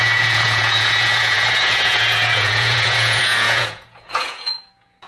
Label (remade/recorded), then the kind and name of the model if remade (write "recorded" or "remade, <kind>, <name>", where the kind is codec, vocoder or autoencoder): remade, vocoder, Vocos